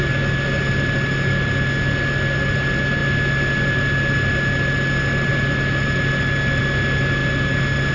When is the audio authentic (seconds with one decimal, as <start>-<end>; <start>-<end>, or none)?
0.0-7.9